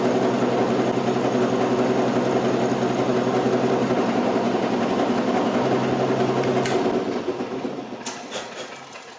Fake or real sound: real